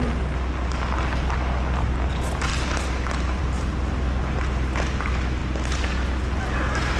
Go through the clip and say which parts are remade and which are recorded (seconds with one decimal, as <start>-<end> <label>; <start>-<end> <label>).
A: 0.0-7.0 recorded